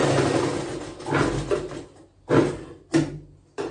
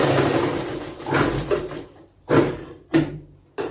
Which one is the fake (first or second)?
second